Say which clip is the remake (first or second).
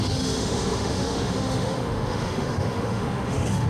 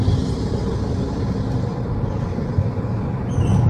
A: first